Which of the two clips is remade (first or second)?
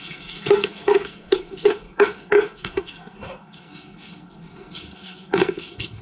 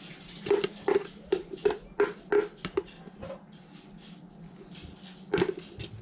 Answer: first